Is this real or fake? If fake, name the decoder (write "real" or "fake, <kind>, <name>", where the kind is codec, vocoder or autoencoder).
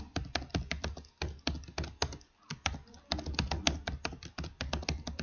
real